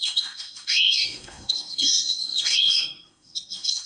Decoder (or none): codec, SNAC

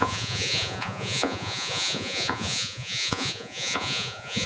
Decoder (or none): vocoder, Vocos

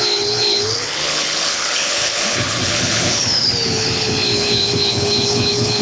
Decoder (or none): codec, HILCodec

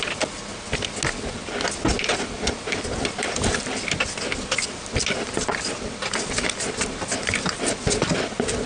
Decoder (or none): none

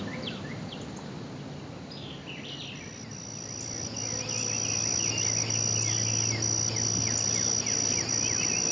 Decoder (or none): none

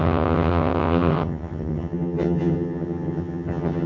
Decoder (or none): vocoder, HiFi-GAN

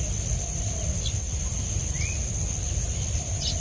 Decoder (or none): none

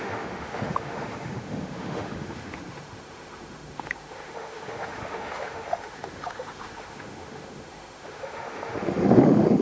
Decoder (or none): autoencoder, DAC-VAE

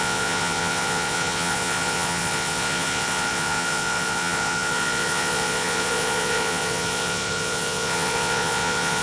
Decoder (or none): vocoder, Vocos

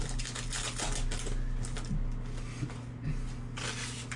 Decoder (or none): none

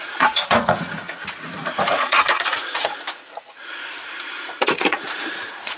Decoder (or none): vocoder, Vocos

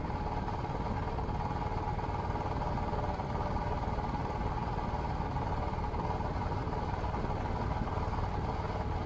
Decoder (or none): none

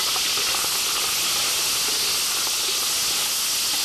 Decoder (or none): none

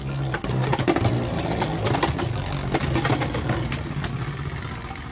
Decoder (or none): none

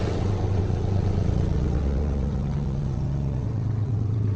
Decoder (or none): vocoder, WaveNeXt